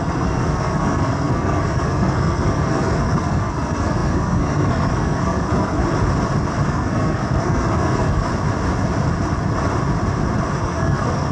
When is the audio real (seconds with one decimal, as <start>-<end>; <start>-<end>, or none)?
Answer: 5.8-6.7; 8.3-10.6